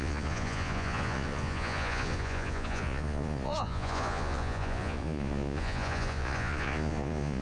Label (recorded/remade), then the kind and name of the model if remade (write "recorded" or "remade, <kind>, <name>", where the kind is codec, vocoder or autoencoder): remade, vocoder, Vocos